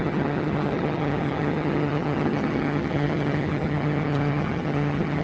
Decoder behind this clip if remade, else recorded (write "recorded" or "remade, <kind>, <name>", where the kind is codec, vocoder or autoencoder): remade, vocoder, HiFi-GAN